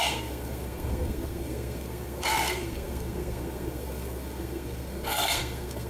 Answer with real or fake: fake